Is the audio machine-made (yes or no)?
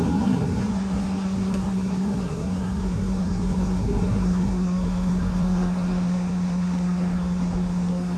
yes